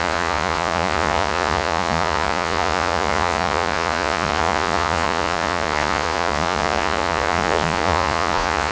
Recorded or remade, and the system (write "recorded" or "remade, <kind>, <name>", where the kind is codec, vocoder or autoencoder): remade, vocoder, Vocos